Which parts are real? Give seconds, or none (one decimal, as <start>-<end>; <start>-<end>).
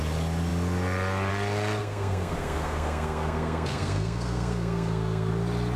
0.0-1.8; 5.3-5.8